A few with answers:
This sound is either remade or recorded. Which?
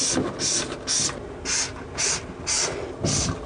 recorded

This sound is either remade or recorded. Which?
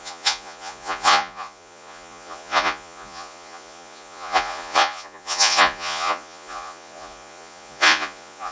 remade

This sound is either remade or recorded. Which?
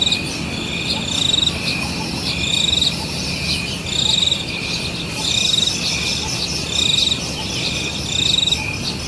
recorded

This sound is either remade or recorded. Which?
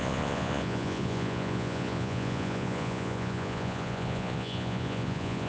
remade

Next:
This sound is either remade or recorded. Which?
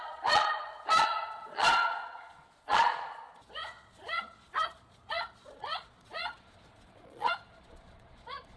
remade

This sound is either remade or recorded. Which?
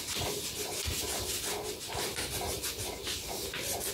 remade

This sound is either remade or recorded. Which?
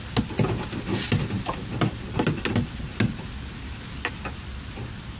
recorded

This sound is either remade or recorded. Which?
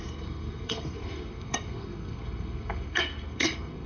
remade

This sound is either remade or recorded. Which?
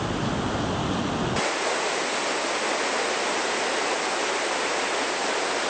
recorded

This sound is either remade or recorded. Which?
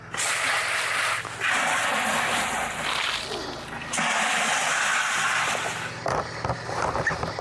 recorded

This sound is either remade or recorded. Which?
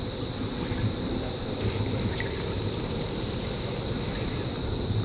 remade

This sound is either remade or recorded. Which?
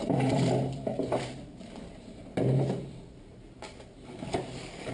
remade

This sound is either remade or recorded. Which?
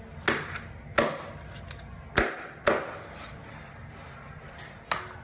recorded